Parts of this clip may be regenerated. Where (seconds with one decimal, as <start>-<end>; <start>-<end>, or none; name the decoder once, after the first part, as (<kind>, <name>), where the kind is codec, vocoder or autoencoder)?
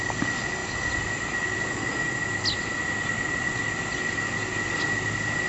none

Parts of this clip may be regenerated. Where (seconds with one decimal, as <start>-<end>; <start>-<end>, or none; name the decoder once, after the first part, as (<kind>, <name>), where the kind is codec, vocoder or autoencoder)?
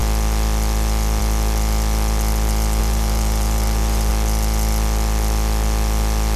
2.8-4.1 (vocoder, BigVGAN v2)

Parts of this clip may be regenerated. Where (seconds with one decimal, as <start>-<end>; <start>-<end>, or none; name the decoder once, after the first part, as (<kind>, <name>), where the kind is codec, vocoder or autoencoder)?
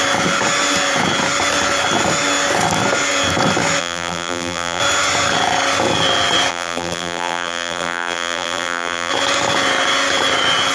3.8-4.8 (vocoder, BigVGAN v2); 6.5-9.1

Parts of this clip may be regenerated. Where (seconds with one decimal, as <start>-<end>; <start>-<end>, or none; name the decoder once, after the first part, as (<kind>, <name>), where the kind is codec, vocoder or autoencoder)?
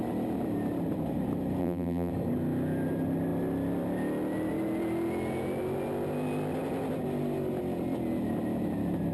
1.6-2.1 (vocoder, BigVGAN v2)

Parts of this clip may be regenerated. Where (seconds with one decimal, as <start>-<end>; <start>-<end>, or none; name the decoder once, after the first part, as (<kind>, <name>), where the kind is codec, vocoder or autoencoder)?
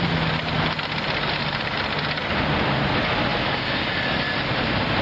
0.0-5.0 (vocoder, BigVGAN v2)